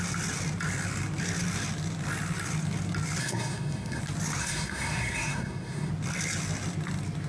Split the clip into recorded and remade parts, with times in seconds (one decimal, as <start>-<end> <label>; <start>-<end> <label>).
0.0-3.2 recorded; 3.2-4.0 remade; 4.0-4.4 recorded; 4.4-5.9 remade; 5.9-7.3 recorded